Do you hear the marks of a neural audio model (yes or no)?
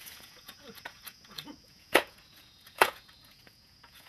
yes